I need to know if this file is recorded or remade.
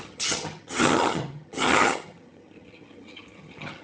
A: remade